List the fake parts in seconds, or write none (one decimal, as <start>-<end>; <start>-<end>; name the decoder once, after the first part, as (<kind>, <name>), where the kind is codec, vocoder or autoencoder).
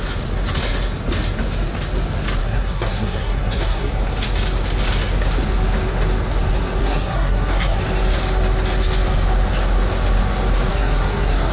2.4-3.9 (codec, SNAC); 6.8-7.8; 10.7-11.5